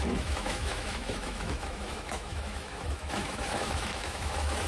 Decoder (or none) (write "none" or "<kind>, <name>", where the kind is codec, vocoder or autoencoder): autoencoder, DAC-VAE